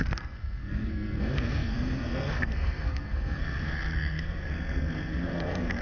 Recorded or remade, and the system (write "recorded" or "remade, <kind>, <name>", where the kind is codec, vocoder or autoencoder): remade, codec, SNAC